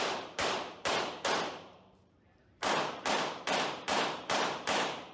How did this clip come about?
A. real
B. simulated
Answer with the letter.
B